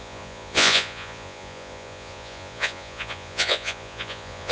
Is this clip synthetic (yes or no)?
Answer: yes